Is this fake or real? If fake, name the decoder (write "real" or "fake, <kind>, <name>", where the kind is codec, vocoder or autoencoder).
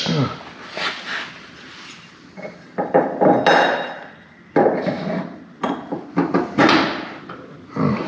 real